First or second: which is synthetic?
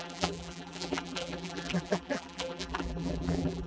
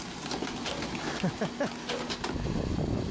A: first